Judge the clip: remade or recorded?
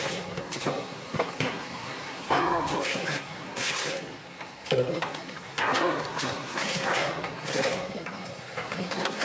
remade